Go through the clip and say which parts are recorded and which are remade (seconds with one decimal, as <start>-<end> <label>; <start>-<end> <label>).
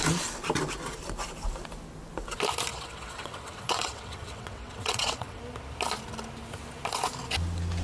0.0-2.7 recorded; 2.7-5.4 remade; 5.4-7.8 recorded